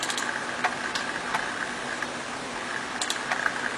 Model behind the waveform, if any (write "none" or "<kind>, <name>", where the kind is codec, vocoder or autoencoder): vocoder, BigVGAN v2